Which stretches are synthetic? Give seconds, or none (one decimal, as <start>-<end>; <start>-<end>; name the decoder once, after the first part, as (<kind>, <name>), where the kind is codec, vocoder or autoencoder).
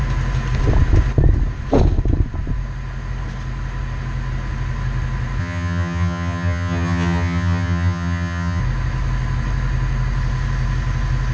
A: 5.4-8.6 (vocoder, HiFi-GAN)